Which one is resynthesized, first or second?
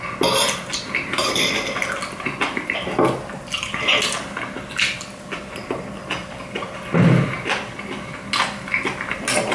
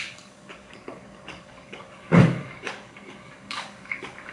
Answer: second